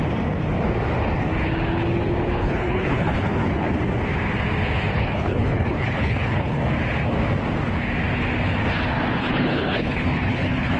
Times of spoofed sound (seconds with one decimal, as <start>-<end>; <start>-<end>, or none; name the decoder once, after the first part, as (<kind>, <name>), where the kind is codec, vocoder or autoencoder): 2.4-3.7 (codec, HILCodec); 4.9-6.6; 9.2-10.8